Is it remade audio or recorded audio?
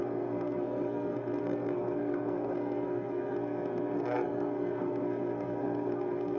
remade